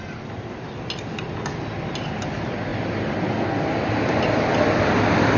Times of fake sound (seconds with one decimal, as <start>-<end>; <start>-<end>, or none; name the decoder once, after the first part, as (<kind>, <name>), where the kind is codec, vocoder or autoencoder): none